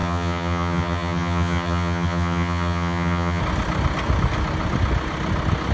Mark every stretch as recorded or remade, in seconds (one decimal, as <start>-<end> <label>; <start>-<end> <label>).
0.0-3.4 remade; 3.4-5.7 recorded